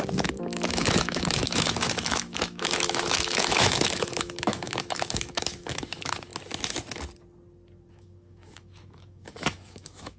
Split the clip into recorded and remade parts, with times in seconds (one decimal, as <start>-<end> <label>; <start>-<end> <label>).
0.0-6.3 remade; 6.3-7.9 recorded; 7.9-10.2 remade